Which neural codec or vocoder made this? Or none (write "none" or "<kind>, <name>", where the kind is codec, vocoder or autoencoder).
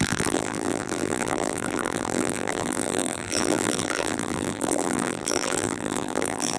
vocoder, BigVGAN v2